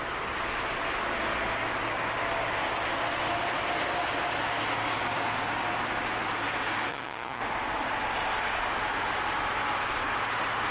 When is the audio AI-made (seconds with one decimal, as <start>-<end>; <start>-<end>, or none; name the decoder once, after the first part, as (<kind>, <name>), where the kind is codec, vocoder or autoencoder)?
6.9-7.4 (vocoder, HiFi-GAN)